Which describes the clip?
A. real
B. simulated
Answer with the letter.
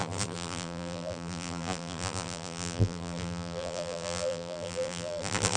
B